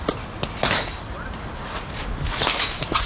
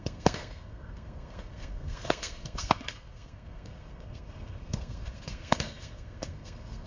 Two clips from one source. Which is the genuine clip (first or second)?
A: first